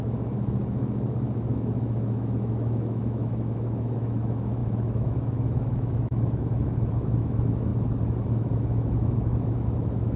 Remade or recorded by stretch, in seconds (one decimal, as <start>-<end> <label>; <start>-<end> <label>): 0.0-7.7 remade; 7.7-8.3 recorded; 8.3-10.2 remade